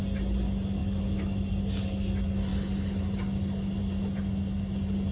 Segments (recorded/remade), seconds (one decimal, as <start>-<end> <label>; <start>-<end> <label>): 0.0-5.1 recorded